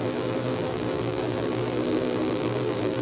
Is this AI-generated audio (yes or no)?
yes